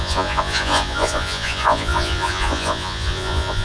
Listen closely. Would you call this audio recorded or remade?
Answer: remade